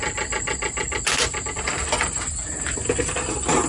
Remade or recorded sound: recorded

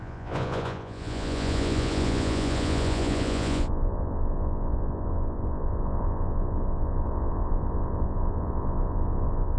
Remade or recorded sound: remade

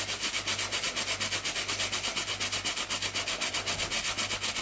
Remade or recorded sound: recorded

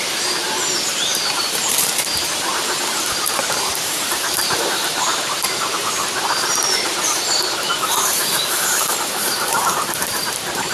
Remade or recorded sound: remade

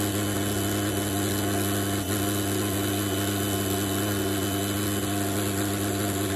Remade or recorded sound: recorded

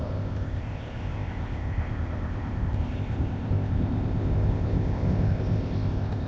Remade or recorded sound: remade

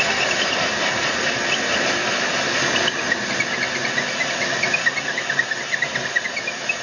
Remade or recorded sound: recorded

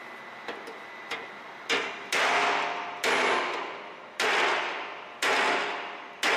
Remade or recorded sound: recorded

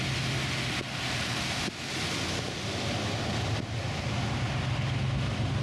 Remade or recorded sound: recorded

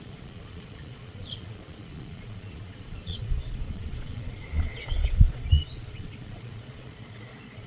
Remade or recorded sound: remade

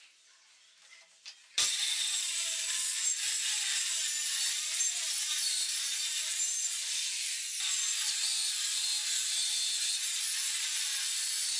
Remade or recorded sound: remade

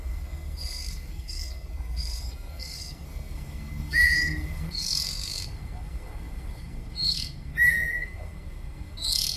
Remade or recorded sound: remade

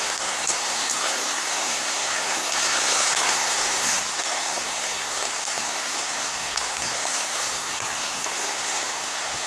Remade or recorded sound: remade